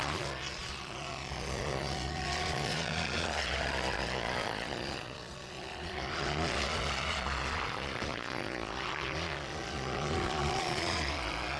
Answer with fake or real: fake